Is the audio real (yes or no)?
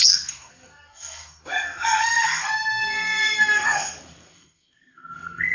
no